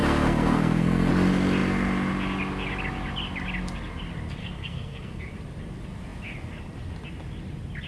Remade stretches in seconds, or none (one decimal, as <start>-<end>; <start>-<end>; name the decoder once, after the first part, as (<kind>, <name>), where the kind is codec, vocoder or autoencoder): 0.0-1.1 (codec, SNAC); 4.4-5.2